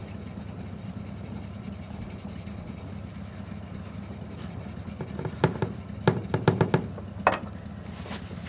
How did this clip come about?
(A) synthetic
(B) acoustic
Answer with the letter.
B